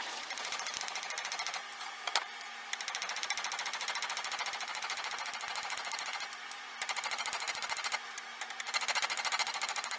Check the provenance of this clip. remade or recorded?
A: recorded